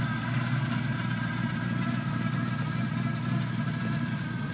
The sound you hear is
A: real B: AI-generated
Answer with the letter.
A